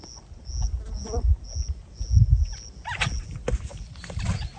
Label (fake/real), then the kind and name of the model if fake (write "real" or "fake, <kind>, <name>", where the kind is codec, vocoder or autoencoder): real